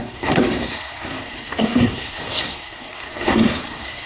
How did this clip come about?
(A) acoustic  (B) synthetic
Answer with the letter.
B